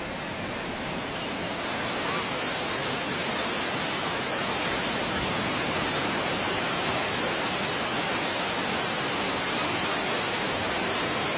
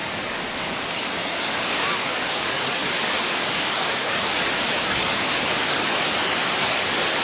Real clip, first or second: first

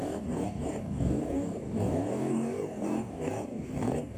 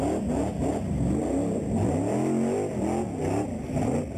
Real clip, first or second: second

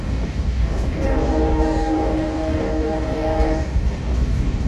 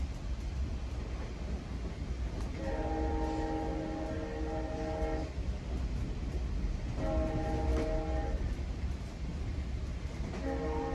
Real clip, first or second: second